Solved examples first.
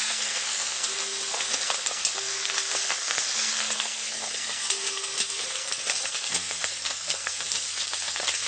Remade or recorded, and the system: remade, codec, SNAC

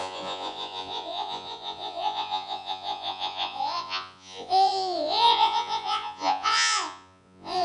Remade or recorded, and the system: remade, vocoder, Vocos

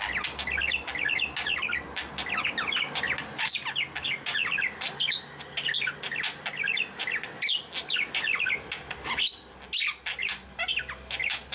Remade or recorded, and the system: recorded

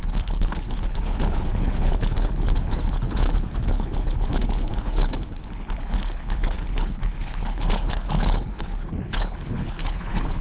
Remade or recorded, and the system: remade, codec, HILCodec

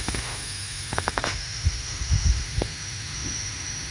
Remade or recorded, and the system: remade, autoencoder, DAC-VAE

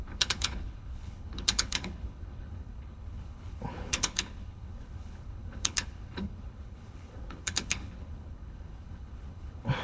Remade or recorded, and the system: remade, codec, HILCodec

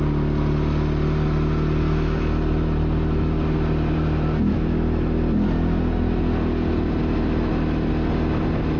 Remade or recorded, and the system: recorded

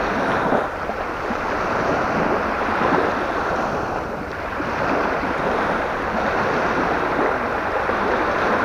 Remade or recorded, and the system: recorded